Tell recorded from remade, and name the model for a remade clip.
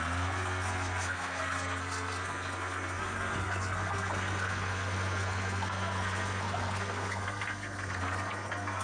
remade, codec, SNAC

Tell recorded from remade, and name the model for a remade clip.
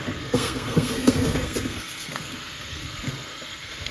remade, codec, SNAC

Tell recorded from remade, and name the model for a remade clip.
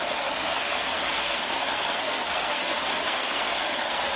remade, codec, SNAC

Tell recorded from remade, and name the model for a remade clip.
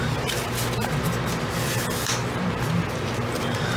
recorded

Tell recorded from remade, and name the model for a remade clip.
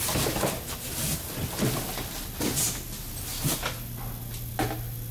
recorded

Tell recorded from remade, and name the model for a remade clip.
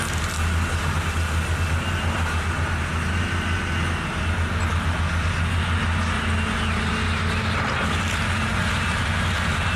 recorded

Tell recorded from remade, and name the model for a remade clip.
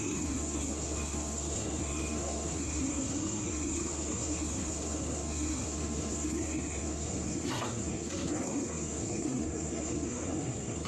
remade, codec, SNAC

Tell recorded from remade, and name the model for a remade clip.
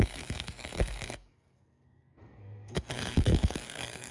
remade, codec, SNAC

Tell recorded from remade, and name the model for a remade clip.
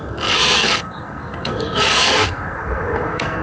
remade, codec, SNAC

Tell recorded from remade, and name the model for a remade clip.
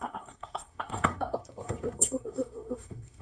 remade, codec, SNAC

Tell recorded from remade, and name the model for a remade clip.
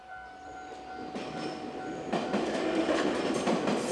recorded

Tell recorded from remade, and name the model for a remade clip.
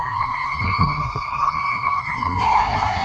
remade, codec, SNAC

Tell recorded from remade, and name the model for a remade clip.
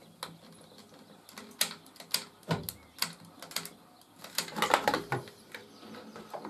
recorded